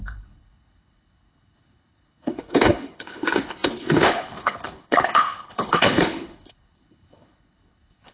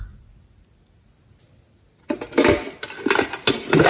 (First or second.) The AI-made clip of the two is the first